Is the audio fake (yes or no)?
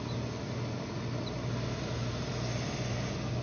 no